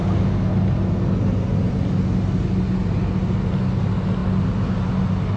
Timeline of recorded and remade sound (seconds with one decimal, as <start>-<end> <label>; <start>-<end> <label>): 0.0-5.4 recorded